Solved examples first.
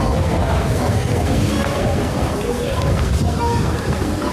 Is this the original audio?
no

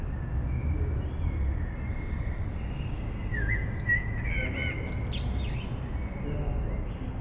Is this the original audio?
yes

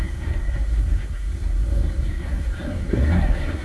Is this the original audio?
no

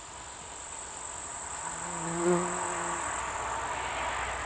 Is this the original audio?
yes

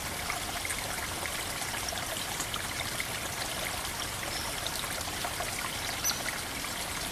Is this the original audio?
yes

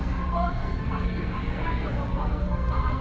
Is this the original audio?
no